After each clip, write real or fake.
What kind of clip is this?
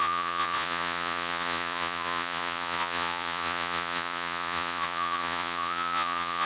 fake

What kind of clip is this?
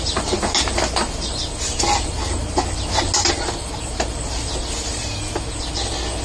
real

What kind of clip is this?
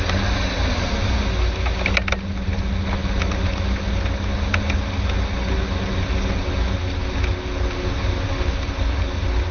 real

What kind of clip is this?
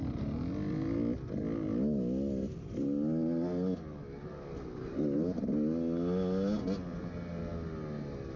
real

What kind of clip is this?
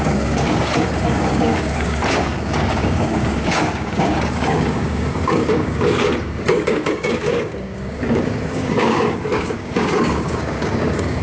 fake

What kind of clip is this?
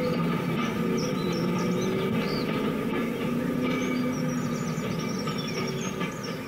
real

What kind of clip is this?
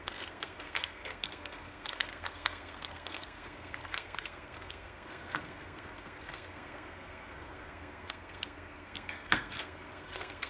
fake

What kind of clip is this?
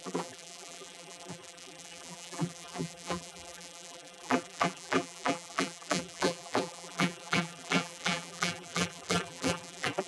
fake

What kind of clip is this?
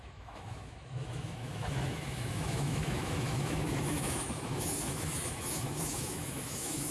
fake